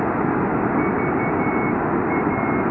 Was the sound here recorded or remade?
recorded